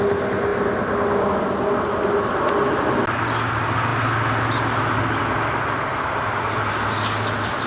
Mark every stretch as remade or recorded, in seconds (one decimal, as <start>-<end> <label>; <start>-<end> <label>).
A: 0.0-7.7 recorded